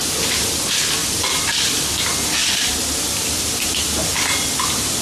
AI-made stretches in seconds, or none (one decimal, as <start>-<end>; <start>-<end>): 1.0-1.9